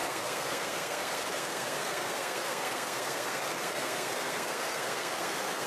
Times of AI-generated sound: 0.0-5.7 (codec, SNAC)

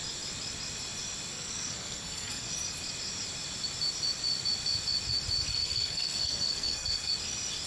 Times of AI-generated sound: 1.3-2.5 (codec, SNAC); 5.5-7.1

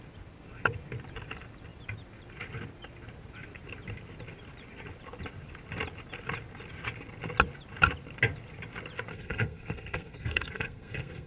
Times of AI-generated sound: 9.1-11.3 (codec, SNAC)

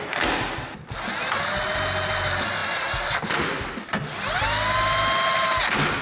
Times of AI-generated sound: none

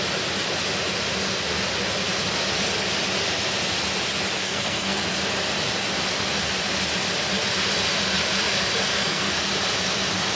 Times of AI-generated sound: 4.4-5.0 (codec, SNAC); 8.9-9.5

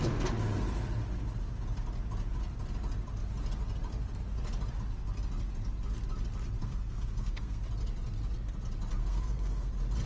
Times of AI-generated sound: 6.6-7.6 (codec, SNAC); 9.0-9.7